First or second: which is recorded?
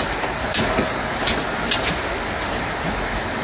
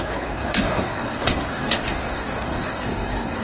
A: first